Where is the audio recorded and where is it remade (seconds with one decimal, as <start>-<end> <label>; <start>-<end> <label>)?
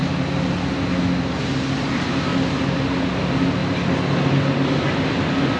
0.0-5.6 recorded